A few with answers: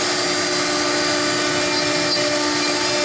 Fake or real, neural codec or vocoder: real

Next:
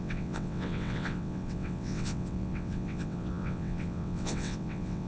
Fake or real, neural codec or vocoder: fake, vocoder, WaveNeXt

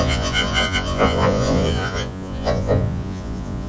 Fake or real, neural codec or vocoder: fake, vocoder, Vocos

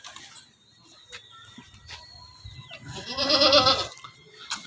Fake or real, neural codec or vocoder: real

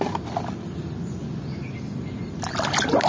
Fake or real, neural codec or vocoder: real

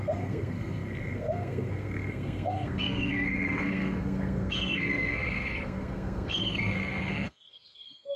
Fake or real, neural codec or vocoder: fake, codec, SNAC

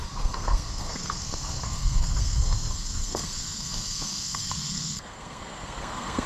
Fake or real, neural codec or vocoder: fake, codec, SNAC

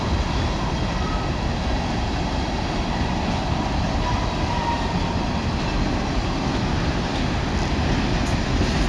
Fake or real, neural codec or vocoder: real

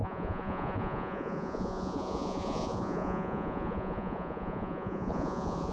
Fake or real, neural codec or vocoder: fake, vocoder, Vocos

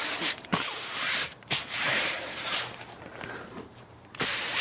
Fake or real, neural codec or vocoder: fake, vocoder, BigVGAN v2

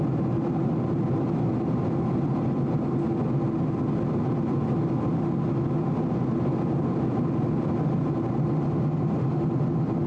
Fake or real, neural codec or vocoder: real